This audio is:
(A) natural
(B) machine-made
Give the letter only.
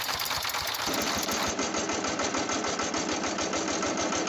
A